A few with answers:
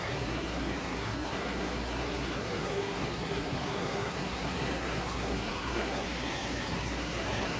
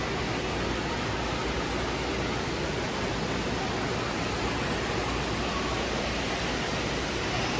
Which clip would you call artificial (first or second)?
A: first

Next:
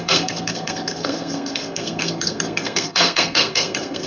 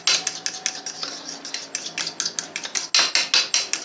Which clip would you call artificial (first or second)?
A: first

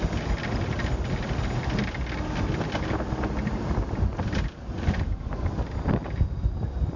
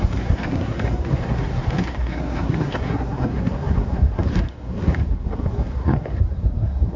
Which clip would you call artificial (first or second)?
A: second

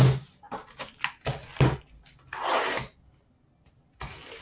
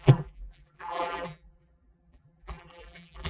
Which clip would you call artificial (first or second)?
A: second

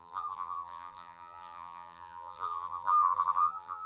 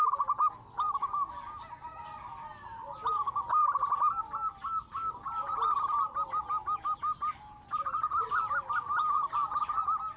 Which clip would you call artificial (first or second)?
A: first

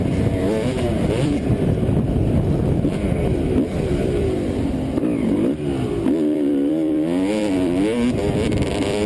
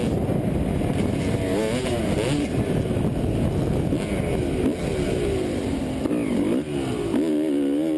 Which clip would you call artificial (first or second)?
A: first